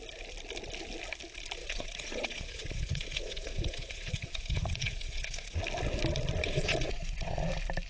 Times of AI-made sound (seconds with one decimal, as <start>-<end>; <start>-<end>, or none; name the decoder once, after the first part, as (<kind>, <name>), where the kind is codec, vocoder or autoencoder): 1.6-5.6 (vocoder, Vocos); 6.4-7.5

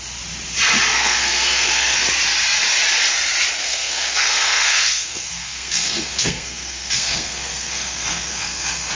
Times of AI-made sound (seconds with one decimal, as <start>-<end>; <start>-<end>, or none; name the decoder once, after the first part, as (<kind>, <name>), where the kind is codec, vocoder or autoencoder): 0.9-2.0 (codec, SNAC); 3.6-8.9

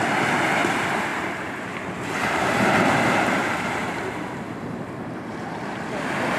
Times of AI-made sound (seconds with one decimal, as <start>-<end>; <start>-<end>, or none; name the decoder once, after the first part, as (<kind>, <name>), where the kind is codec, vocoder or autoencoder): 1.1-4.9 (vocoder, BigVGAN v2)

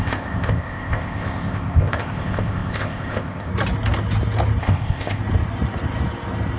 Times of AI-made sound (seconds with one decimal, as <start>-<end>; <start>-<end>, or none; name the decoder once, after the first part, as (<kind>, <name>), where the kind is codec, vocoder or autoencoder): 0.0-3.5 (codec, ZipCodec); 4.6-5.2